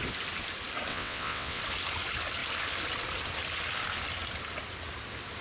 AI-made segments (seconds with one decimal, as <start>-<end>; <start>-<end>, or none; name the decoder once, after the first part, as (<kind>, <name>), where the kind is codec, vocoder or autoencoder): 0.9-1.6 (vocoder, WaveNeXt)